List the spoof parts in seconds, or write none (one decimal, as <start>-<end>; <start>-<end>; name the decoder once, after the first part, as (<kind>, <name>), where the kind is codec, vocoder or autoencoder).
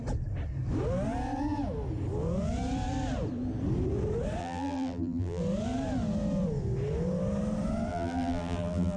4.4-5.4 (vocoder, BigVGAN v2); 7.9-9.0